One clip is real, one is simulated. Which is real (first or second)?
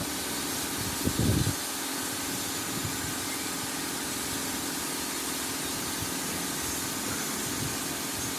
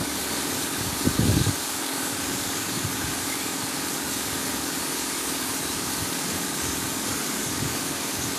first